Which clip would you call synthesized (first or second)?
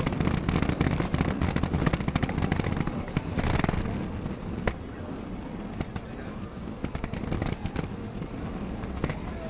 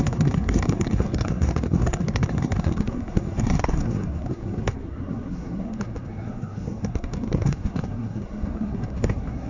second